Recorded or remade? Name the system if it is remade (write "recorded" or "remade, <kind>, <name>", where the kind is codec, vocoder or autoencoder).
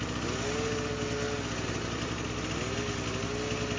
recorded